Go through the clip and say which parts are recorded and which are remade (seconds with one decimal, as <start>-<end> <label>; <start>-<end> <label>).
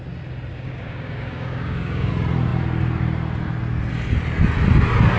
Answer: 0.0-0.5 recorded; 0.5-2.1 remade; 2.1-5.2 recorded